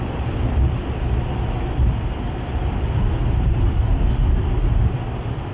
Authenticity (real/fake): fake